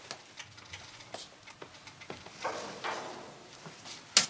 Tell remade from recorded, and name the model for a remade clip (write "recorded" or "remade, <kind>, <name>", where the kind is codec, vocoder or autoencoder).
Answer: recorded